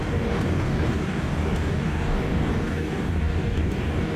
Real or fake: fake